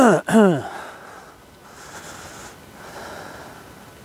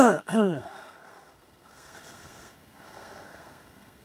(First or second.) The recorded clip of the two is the first